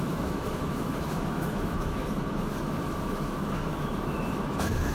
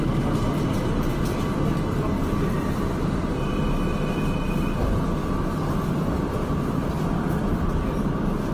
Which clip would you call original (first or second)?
second